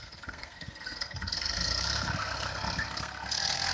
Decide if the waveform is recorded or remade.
remade